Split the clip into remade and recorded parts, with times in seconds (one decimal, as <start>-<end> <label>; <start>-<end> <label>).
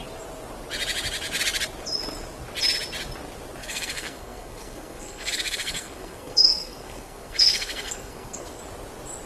0.0-3.6 recorded; 3.6-8.6 remade; 8.6-9.3 recorded